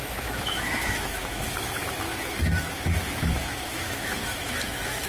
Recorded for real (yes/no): no